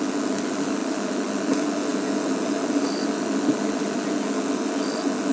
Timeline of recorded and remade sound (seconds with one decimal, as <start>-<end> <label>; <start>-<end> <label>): 0.0-5.3 remade